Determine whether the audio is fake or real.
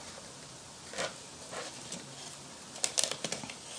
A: real